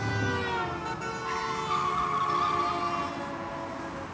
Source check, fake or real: real